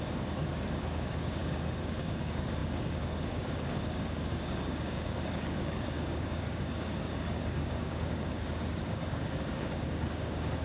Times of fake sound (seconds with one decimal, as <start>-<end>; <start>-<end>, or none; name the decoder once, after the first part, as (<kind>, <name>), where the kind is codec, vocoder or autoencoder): 0.0-10.6 (codec, DAC)